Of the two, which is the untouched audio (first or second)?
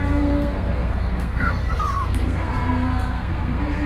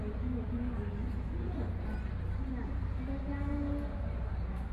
second